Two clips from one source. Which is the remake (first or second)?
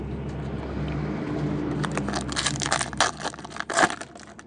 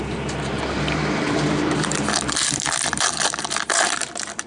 second